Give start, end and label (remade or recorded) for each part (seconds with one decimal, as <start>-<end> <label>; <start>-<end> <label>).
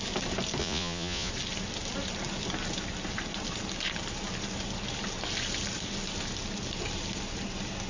0.0-0.6 recorded; 0.6-1.3 remade; 1.3-7.9 recorded